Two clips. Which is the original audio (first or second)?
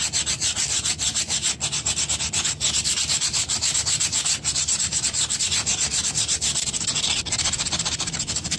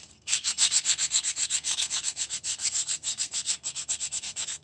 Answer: first